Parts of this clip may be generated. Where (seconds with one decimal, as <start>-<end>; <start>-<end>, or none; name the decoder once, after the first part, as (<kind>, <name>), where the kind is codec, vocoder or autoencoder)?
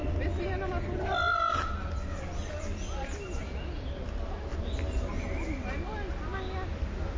none